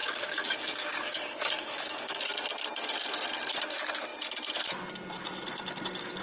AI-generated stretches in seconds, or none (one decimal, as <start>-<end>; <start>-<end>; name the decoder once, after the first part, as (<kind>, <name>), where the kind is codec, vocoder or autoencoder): 0.0-2.2 (codec, DAC)